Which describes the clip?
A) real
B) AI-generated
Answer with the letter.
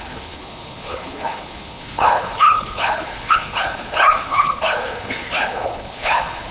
B